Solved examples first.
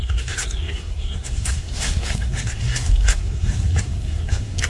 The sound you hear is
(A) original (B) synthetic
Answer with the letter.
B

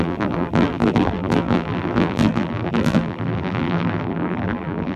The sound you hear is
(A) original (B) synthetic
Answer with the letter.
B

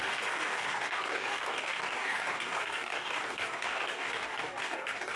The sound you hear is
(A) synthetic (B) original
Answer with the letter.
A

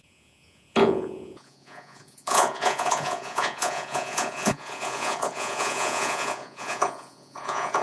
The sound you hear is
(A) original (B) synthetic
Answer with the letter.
B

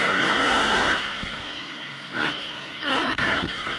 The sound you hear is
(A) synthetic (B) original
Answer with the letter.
A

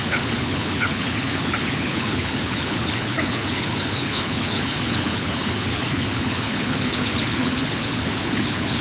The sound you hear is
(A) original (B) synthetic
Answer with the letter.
B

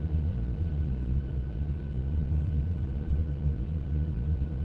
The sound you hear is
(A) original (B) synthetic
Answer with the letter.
B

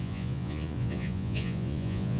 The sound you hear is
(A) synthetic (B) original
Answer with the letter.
A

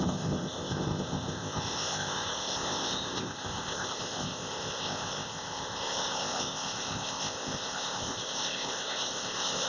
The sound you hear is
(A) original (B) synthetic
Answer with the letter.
B